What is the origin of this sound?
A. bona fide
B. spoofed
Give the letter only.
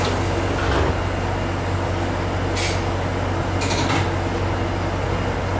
A